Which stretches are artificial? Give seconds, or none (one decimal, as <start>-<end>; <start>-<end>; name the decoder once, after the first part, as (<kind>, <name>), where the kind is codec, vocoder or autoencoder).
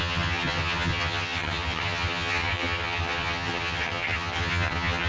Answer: 0.0-5.1 (vocoder, HiFi-GAN)